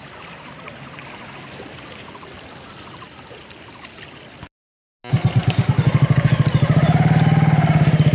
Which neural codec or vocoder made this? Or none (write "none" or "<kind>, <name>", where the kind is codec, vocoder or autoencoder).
none